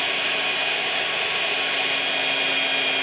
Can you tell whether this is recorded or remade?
recorded